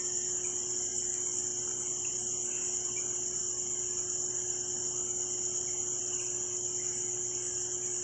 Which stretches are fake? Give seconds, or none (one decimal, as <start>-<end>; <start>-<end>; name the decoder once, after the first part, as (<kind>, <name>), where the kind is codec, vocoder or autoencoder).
none